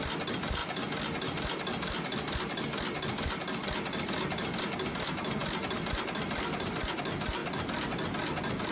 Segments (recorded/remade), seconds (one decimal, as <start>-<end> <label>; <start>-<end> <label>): 0.0-8.7 recorded